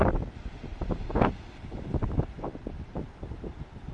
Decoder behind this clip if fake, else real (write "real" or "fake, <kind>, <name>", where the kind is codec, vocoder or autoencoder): real